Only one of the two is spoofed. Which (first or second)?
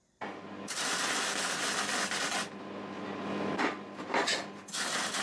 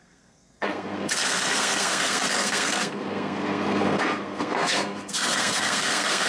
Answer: second